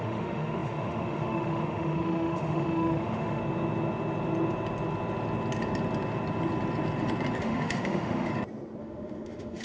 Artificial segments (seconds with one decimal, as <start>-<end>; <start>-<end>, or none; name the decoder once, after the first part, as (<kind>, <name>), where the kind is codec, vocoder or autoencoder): 0.0-3.4 (autoencoder, DAC-VAE); 7.4-8.3; 8.8-9.6